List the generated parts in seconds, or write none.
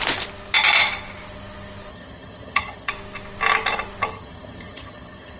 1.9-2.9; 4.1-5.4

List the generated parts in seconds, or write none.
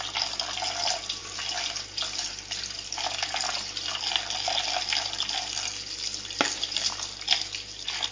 none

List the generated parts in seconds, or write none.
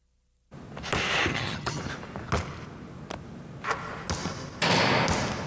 1.3-1.8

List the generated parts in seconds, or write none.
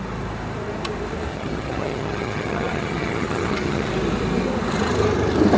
1.3-3.9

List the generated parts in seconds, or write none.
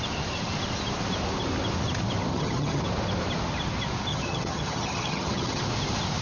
2.3-2.8; 4.1-5.6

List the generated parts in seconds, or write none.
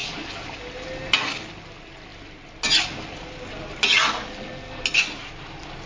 none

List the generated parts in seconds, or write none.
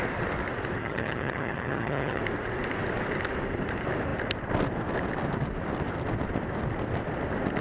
0.8-2.2